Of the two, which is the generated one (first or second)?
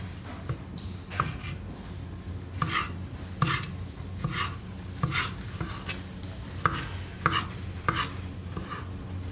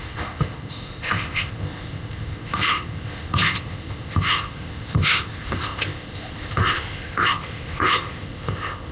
second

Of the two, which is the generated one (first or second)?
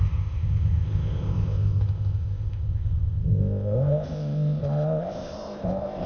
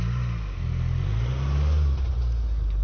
first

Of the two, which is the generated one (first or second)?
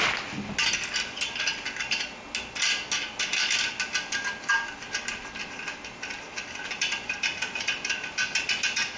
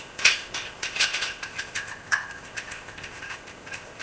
second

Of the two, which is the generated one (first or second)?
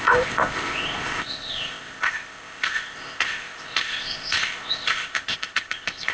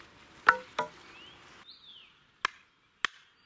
first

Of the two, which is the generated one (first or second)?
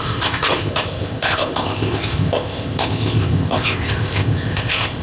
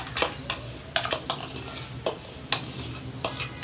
first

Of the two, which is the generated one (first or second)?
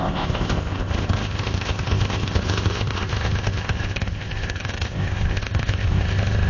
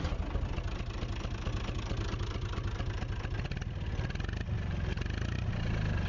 first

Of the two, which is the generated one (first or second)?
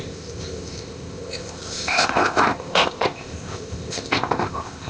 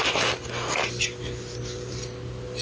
first